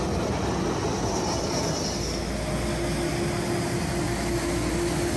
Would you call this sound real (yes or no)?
yes